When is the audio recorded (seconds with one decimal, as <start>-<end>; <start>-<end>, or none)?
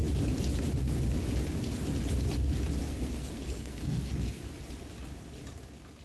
0.0-2.8; 4.4-6.0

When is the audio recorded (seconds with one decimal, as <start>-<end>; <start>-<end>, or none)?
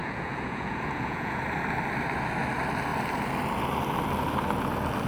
1.4-5.1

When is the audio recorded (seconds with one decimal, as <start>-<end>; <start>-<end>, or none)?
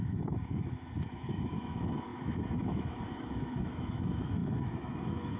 none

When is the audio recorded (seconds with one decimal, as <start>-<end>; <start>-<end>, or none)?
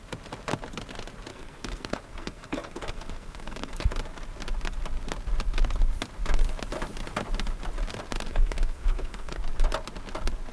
0.0-1.3; 3.9-8.3; 9.4-10.5